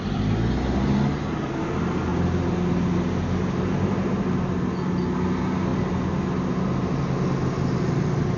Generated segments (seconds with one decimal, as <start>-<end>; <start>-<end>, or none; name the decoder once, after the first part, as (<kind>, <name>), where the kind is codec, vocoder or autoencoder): none